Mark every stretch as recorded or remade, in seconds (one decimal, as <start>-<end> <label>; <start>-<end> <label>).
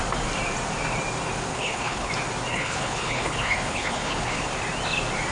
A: 0.0-1.5 recorded; 1.5-2.1 remade; 2.1-2.5 recorded; 2.5-4.4 remade; 4.4-5.3 recorded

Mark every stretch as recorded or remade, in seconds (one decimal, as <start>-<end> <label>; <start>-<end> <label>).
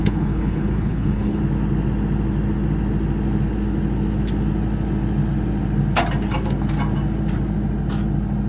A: 0.0-1.4 remade; 1.4-8.5 recorded